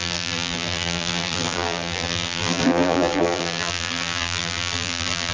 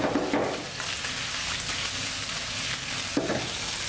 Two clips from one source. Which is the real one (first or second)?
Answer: second